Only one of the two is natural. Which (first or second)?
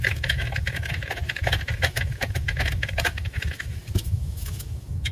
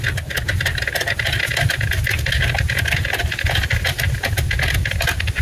second